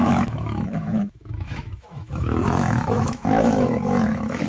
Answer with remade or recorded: remade